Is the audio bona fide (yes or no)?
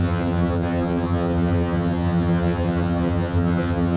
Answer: no